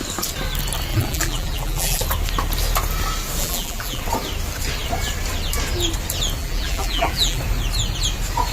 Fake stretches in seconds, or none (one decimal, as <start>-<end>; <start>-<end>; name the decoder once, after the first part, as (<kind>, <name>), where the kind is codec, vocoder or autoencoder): 0.9-2.0 (vocoder, BigVGAN v2); 3.4-4.0; 6.4-7.4